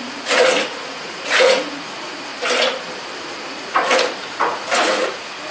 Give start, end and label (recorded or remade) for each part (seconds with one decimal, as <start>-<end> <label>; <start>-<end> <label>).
0.0-2.3 remade; 2.3-3.5 recorded; 3.5-5.5 remade